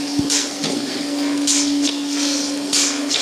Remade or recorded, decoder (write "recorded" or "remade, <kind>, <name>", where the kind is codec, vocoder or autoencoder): remade, codec, SNAC